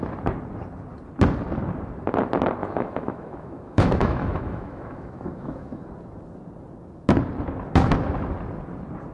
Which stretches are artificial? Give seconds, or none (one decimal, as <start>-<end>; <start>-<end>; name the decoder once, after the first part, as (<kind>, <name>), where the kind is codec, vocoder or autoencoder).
2.6-5.9 (autoencoder, DAC-VAE)